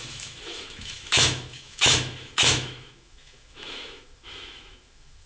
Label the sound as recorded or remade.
remade